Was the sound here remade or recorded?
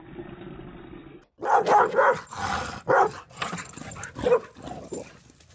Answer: recorded